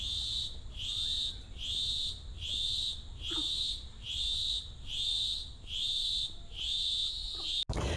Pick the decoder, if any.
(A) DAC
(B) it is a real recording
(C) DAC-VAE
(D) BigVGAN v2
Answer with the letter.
B